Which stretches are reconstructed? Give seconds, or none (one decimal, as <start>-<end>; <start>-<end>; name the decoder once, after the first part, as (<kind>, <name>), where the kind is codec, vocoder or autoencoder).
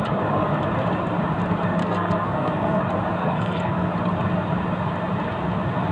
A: 1.8-2.8 (codec, SNAC); 3.2-3.9